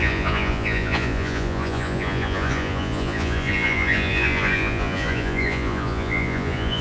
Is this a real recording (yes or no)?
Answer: no